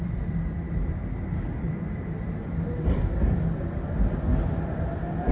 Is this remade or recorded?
remade